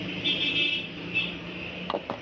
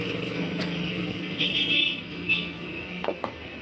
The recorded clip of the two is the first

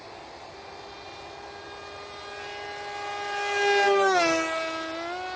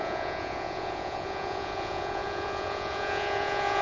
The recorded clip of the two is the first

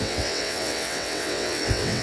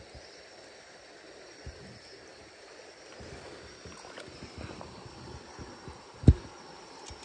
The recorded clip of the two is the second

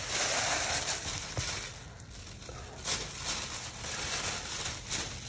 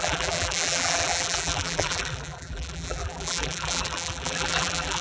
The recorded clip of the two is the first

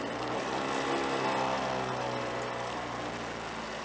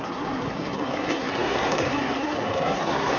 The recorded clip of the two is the first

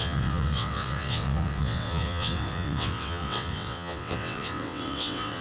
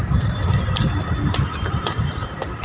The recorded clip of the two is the second